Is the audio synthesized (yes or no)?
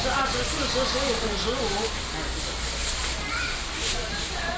no